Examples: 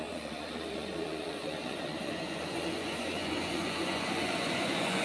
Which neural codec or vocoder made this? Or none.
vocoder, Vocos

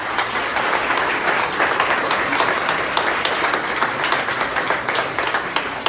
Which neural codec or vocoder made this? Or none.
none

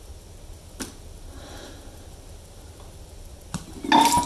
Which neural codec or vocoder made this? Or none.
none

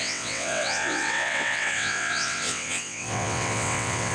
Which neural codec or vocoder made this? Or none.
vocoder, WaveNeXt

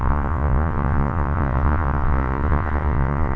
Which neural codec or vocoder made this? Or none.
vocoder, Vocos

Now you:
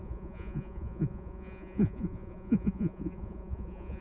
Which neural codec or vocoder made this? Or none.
vocoder, Vocos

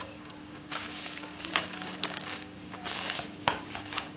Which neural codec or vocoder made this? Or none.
codec, DAC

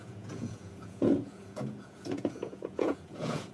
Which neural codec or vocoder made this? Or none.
vocoder, Vocos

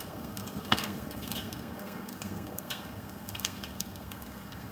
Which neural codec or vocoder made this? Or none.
codec, SNAC